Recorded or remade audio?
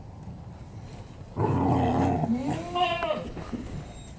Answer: recorded